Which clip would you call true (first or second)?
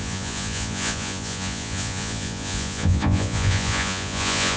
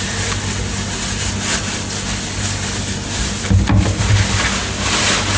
second